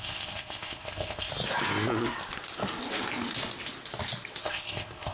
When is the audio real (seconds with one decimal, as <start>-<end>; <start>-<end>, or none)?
1.3-4.4